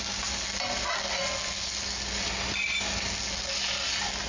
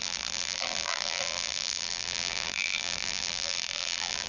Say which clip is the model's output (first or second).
second